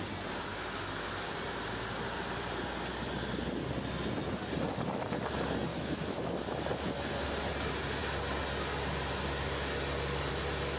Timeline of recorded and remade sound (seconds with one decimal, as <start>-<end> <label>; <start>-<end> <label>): 0.0-0.5 recorded; 0.5-1.3 remade; 1.3-5.7 recorded; 5.7-6.4 remade; 6.4-10.8 recorded